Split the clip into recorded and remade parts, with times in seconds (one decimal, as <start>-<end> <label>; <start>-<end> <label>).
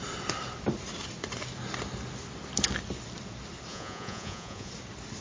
0.0-3.7 recorded; 3.7-4.7 remade; 4.7-5.2 recorded